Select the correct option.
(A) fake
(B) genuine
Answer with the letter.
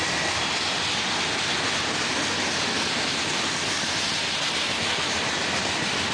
B